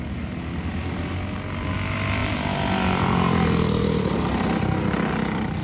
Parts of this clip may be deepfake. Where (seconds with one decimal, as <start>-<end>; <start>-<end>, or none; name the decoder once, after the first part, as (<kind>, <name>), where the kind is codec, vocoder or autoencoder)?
none